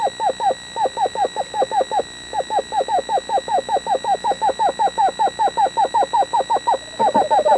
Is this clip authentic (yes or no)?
yes